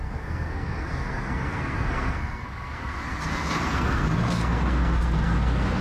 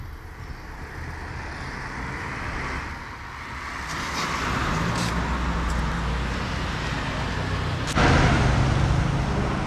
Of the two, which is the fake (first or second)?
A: first